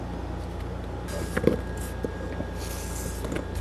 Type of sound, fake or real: real